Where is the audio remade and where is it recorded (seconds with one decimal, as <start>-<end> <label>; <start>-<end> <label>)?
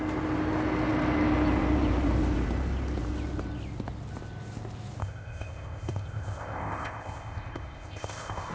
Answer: 0.0-5.0 recorded; 5.0-8.5 remade